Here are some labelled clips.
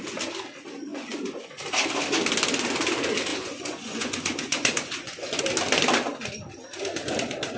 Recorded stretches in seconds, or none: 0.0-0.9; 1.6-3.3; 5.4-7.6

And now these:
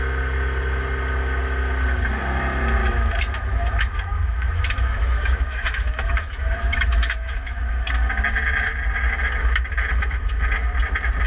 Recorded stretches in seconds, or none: 0.0-2.8; 7.9-11.3

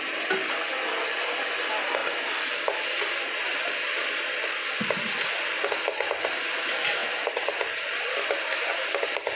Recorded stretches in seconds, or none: 0.0-2.0; 2.5-9.4